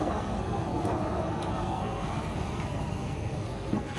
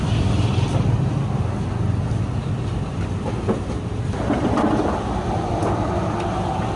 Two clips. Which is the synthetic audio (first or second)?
first